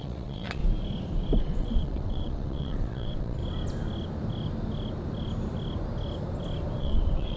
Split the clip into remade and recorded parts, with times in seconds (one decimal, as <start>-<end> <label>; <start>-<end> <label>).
0.0-0.6 remade; 0.6-1.4 recorded; 1.4-3.4 remade; 3.4-6.8 recorded; 6.8-7.4 remade